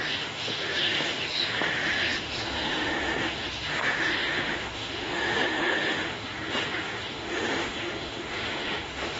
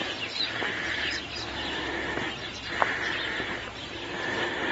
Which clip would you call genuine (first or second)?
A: second